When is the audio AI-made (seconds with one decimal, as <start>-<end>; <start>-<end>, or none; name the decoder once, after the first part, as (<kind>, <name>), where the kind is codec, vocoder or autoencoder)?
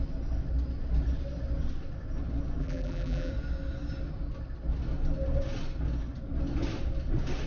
2.6-3.3 (vocoder, BigVGAN v2)